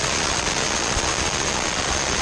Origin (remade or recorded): remade